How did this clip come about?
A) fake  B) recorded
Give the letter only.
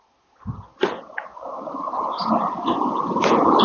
B